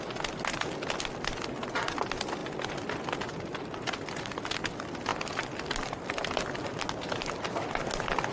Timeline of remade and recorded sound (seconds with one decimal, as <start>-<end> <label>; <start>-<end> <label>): 0.0-8.3 recorded